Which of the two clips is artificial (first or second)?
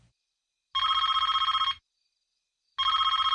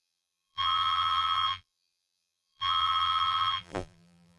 second